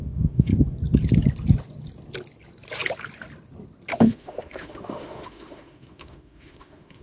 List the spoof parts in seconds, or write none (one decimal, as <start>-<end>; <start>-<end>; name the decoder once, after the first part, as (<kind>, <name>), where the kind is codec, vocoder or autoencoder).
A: 0.0-0.5 (autoencoder, DAC-VAE); 4.0-7.0